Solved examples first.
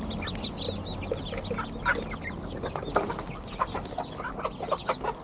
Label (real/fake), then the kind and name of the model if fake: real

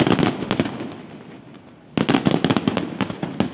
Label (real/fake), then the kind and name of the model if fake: real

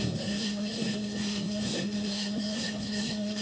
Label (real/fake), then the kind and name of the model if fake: fake, codec, SNAC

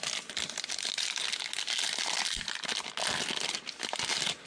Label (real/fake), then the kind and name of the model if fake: real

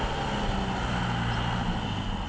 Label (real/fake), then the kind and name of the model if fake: real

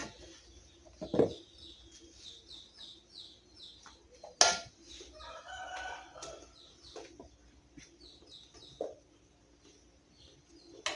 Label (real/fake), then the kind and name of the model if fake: real